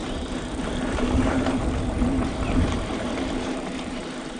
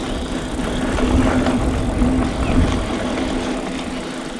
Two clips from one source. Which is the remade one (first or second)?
first